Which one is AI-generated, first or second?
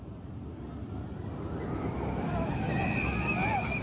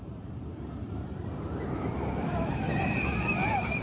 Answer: second